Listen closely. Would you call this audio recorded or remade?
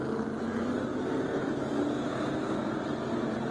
recorded